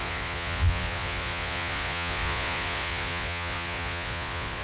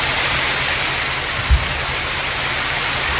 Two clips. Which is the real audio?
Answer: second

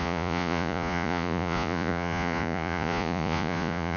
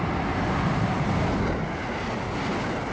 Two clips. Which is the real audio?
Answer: second